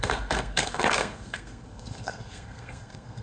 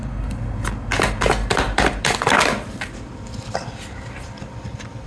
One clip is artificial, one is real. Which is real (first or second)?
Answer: second